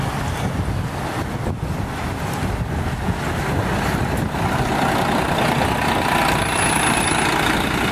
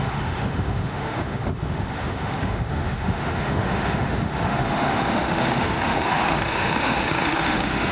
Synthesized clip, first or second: second